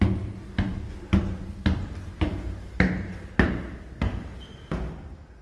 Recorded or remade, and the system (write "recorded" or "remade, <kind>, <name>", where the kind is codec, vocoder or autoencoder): recorded